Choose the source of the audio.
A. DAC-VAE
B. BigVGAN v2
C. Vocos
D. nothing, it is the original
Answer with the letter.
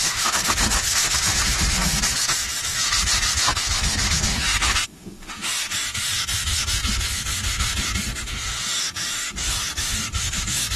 A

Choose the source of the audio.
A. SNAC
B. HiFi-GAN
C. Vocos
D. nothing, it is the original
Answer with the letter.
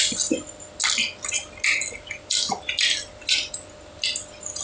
D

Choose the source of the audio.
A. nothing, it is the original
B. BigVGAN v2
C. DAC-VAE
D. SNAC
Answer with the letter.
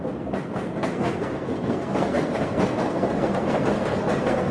D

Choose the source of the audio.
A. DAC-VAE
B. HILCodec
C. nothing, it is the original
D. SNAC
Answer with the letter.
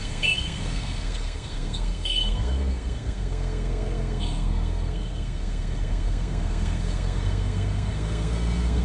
D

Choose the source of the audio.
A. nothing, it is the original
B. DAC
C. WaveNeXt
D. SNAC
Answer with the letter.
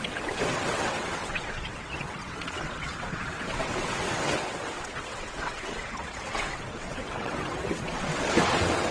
C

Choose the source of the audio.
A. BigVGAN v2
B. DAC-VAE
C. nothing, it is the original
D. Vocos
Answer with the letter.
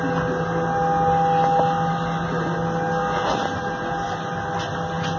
C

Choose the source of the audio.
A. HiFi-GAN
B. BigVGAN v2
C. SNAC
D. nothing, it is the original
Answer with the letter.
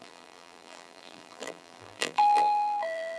B